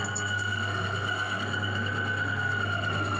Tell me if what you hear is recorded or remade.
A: remade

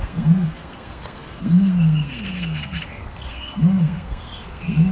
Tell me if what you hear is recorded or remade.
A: remade